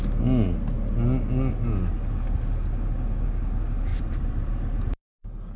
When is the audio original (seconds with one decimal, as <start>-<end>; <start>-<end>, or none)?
0.0-3.9

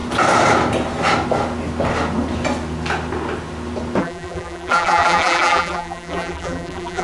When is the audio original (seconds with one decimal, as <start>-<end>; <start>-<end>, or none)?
0.0-4.0

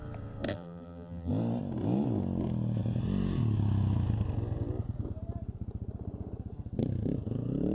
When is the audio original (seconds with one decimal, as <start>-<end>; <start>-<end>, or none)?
0.0-0.5; 1.3-7.7

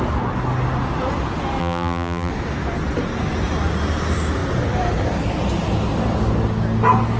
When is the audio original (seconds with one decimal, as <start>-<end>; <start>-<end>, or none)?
0.0-1.6; 2.3-7.2

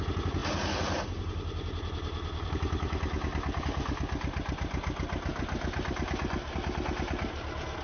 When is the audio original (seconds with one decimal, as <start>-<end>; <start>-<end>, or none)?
0.0-7.8